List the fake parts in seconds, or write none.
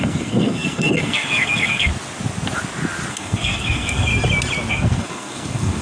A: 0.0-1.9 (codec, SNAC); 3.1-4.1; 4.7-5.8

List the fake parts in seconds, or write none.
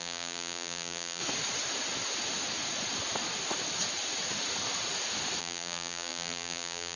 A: 0.0-1.2 (vocoder, BigVGAN v2); 5.4-7.0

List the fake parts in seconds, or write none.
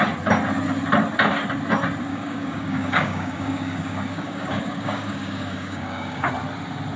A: 2.1-6.3 (codec, DAC)